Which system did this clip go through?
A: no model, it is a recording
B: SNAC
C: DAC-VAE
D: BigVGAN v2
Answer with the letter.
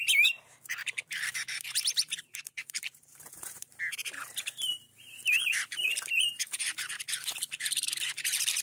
D